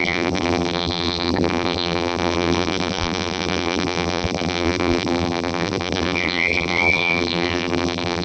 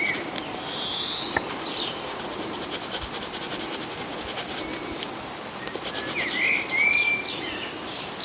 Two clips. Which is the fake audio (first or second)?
first